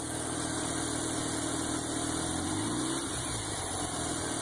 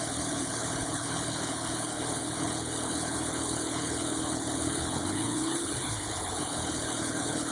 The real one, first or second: first